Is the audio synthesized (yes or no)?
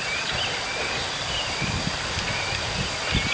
no